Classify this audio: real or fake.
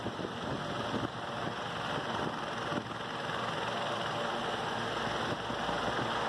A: real